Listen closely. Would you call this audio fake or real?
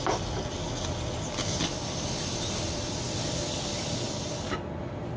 real